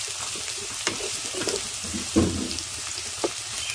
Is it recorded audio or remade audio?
recorded